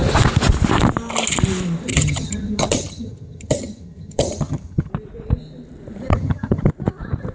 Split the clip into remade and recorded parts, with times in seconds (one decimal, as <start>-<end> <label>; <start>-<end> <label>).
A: 0.0-1.9 recorded; 1.9-4.9 remade; 4.9-6.1 recorded; 6.1-6.7 remade; 6.7-7.3 recorded